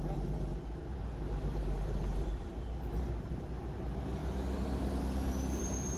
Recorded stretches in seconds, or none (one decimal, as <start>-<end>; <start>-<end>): 4.2-5.0